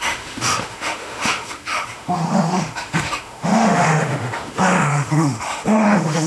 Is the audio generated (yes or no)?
yes